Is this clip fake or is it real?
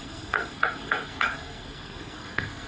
fake